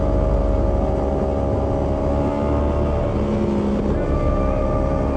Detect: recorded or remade recorded